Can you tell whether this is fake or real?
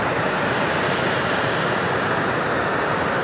fake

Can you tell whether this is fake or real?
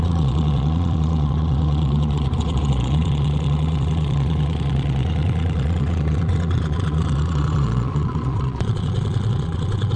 fake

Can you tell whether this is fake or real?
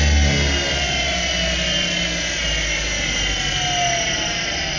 real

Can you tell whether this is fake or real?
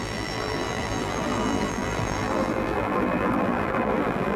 fake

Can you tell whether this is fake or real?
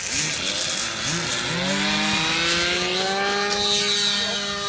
real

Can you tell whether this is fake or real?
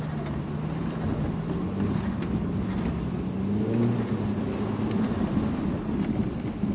real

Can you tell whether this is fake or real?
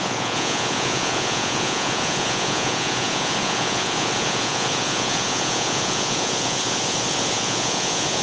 fake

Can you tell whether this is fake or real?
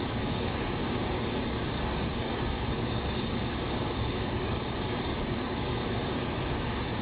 fake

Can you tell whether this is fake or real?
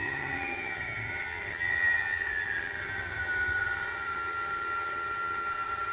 fake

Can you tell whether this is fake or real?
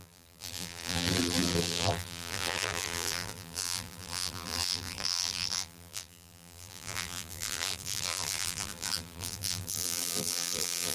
fake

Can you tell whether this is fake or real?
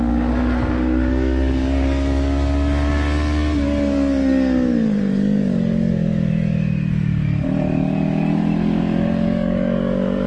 fake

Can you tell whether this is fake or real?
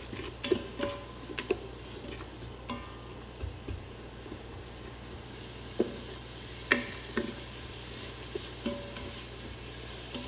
real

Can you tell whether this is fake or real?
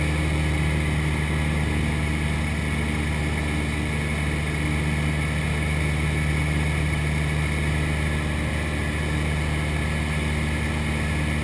real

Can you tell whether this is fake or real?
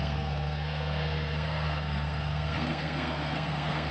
fake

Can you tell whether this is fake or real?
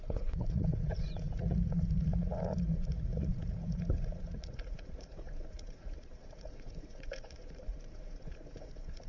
fake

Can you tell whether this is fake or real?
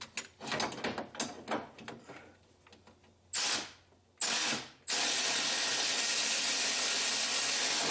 real